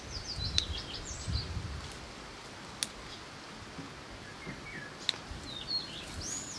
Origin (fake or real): real